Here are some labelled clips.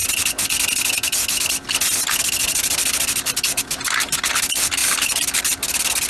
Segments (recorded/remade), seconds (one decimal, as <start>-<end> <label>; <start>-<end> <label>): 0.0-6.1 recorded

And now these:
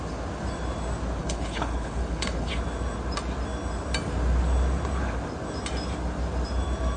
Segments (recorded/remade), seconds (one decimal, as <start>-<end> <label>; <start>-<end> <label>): 0.0-1.2 recorded; 1.2-2.5 remade; 2.5-7.0 recorded

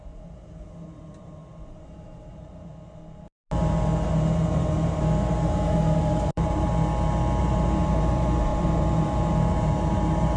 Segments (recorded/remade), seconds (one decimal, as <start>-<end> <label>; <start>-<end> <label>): 0.0-2.7 remade; 2.7-6.2 recorded; 6.2-6.7 remade; 6.7-7.4 recorded; 7.4-10.4 remade